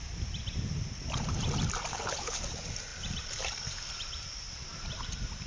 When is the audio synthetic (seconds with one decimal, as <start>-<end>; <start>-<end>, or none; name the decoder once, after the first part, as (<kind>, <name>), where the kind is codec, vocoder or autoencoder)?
1.9-2.4 (codec, HILCodec)